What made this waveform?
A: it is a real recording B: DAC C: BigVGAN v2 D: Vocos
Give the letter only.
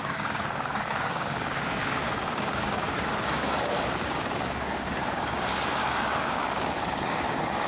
B